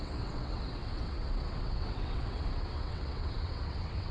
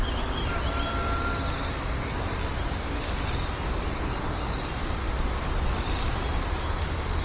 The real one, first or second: second